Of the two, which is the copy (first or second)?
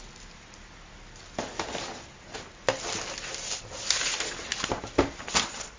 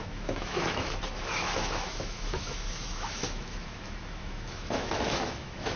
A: second